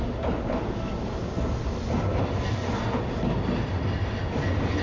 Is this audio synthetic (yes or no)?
no